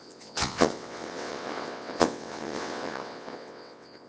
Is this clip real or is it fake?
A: fake